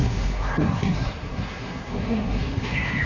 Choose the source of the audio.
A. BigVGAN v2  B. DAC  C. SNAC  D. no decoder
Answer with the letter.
C